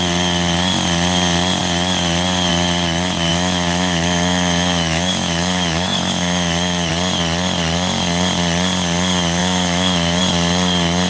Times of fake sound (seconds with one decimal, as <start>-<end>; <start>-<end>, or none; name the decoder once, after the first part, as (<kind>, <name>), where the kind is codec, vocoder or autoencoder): 3.3-6.9 (autoencoder, DAC-VAE); 9.4-10.2